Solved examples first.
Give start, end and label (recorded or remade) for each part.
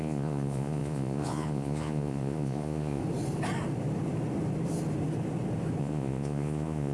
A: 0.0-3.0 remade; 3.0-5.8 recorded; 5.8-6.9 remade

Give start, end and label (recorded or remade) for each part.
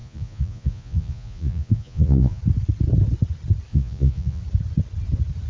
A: 0.0-2.4 remade; 2.4-3.7 recorded; 3.7-4.4 remade; 4.4-5.5 recorded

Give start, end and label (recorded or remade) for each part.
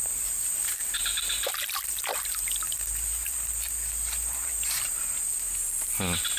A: 0.0-4.4 recorded; 4.4-5.0 remade; 5.0-6.4 recorded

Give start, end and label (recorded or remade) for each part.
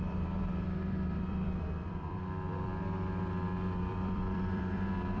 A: 0.0-2.7 remade; 2.7-3.9 recorded; 3.9-5.2 remade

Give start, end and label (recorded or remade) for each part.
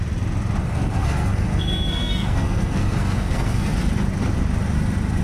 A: 0.0-0.6 recorded; 0.6-3.7 remade; 3.7-5.2 recorded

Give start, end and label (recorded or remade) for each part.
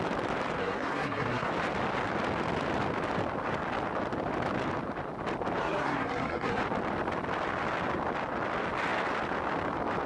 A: 0.0-0.6 recorded; 0.6-1.5 remade; 1.5-5.6 recorded; 5.6-6.6 remade; 6.6-10.1 recorded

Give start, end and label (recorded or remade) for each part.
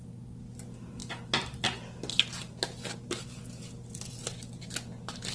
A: 0.0-5.3 recorded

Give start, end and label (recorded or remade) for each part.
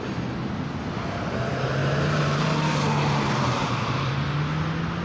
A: 0.0-1.8 recorded; 1.8-4.1 remade; 4.1-5.0 recorded